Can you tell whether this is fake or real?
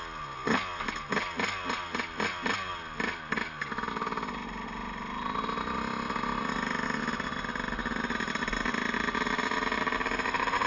real